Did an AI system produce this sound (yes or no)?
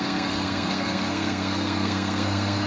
yes